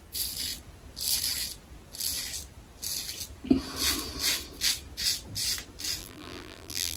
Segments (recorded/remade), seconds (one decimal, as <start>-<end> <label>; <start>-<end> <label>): 0.0-6.0 recorded; 6.0-7.0 remade